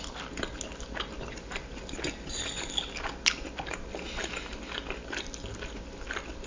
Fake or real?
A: real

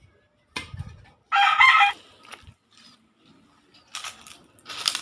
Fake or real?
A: real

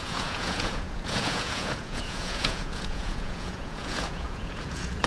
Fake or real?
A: fake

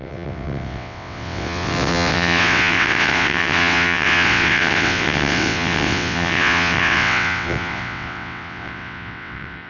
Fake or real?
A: fake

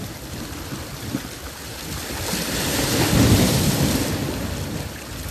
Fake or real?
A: real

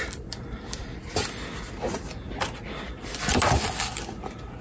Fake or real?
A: real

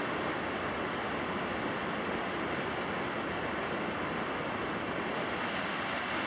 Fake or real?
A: real